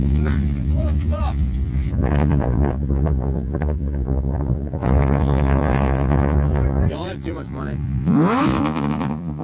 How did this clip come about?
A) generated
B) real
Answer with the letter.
A